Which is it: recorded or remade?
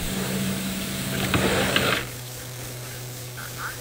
remade